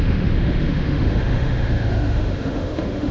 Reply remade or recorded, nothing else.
remade